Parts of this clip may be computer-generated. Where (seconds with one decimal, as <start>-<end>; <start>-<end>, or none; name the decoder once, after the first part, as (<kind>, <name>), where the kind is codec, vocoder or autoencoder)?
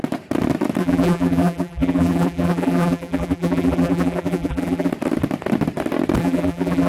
0.8-4.9 (vocoder, BigVGAN v2); 6.2-6.9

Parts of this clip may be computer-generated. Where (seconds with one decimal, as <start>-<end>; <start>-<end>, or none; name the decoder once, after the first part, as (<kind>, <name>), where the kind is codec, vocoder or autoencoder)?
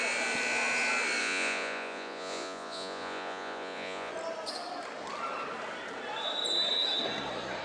1.2-4.1 (vocoder, Vocos)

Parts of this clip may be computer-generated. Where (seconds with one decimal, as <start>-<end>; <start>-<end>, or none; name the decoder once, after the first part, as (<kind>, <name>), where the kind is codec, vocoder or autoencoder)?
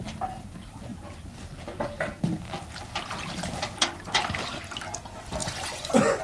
5.4-6.2 (vocoder, Vocos)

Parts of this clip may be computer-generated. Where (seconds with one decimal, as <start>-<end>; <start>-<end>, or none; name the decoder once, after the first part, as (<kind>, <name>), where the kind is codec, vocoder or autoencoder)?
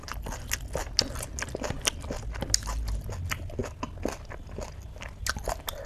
none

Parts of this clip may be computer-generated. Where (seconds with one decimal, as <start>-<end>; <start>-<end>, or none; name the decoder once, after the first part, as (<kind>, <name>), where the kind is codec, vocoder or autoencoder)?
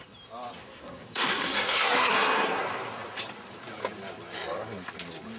0.6-2.6 (codec, SNAC)